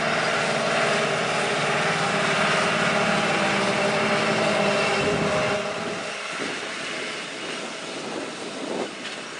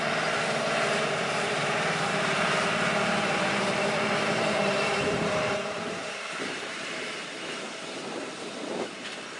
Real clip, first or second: first